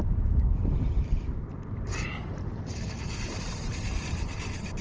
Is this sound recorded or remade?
remade